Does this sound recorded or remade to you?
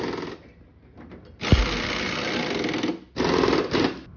recorded